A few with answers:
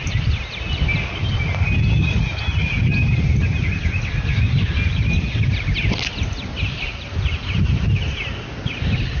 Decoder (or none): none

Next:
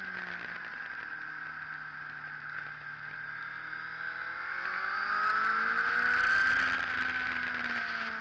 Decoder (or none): none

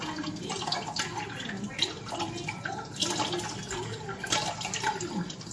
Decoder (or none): none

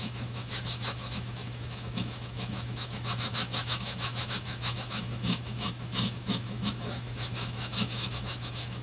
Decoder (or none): autoencoder, DAC-VAE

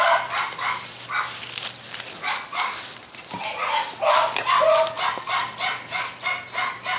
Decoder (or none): none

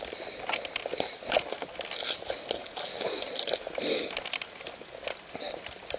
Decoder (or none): none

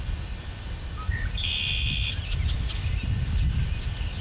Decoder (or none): vocoder, BigVGAN v2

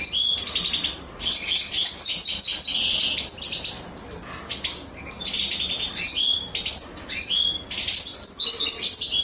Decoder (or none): none